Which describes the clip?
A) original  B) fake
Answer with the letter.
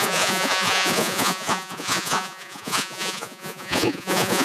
B